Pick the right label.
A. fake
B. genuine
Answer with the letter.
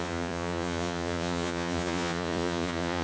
A